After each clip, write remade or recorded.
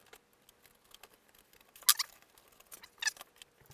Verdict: recorded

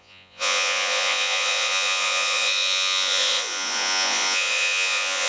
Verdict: remade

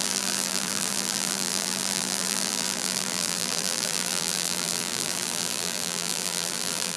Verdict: remade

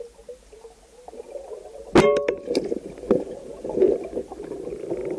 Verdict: recorded